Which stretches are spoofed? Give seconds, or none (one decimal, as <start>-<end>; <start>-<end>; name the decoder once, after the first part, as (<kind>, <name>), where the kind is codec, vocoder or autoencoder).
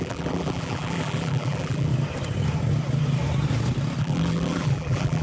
0.0-1.9 (vocoder, BigVGAN v2); 4.0-5.2